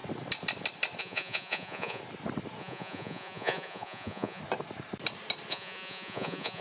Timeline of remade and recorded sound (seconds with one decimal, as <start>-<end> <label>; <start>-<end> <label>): 0.0-1.0 recorded; 1.0-2.0 remade; 2.0-2.6 recorded; 2.6-4.4 remade; 4.4-5.5 recorded; 5.5-6.6 remade